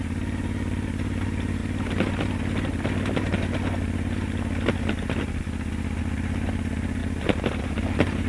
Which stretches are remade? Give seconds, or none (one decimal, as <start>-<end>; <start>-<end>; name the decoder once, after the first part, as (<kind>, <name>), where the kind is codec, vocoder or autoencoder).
0.0-1.6 (vocoder, BigVGAN v2); 6.0-7.0; 7.6-8.3